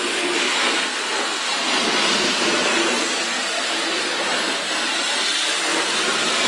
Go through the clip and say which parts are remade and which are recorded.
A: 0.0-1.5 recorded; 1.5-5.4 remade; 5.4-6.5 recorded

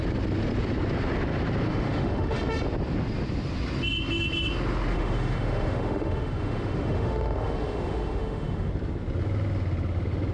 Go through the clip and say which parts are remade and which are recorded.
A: 0.0-1.7 recorded; 1.7-2.4 remade; 2.4-4.9 recorded; 4.9-8.7 remade; 8.7-10.3 recorded